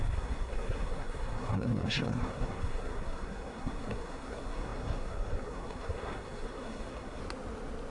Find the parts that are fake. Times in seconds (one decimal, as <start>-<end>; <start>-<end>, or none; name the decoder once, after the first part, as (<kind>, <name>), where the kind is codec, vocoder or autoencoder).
0.0-7.2 (codec, SNAC)